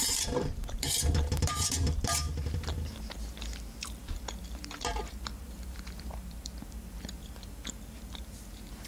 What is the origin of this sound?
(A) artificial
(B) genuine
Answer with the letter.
A